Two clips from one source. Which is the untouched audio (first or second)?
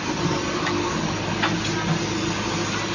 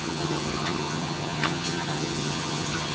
first